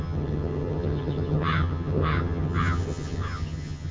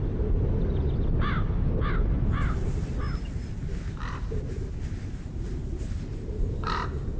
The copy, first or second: first